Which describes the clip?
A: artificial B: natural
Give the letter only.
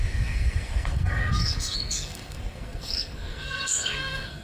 A